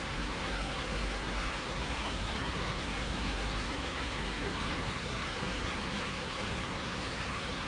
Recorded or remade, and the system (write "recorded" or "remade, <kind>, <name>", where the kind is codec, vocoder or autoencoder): remade, codec, SNAC